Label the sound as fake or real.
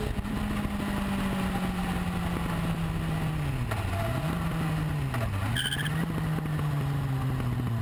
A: real